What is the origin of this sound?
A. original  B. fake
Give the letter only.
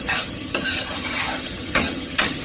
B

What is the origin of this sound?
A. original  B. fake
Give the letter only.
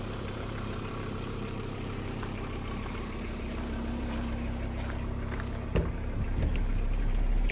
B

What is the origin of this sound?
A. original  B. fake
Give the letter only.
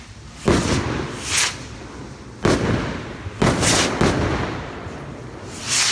A